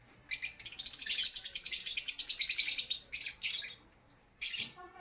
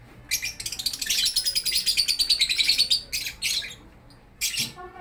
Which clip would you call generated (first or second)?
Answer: first